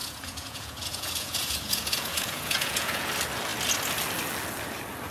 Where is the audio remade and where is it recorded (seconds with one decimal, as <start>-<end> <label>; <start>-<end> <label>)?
0.0-3.1 remade; 3.1-5.1 recorded